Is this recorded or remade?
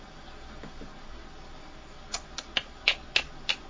recorded